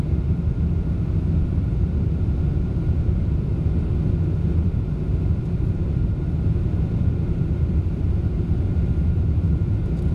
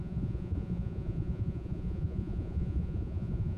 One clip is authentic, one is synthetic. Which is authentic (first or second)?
first